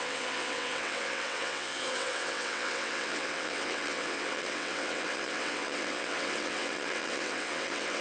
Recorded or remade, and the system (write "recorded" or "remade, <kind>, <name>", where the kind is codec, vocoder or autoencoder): remade, vocoder, WaveNeXt